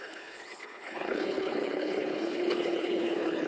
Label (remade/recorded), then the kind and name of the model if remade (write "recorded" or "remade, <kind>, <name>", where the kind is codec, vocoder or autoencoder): remade, codec, HILCodec